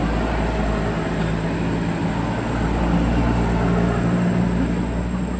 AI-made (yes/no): no